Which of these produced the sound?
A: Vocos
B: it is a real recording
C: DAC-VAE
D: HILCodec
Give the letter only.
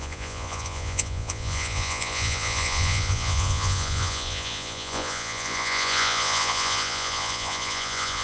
A